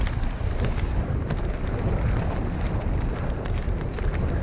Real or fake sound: real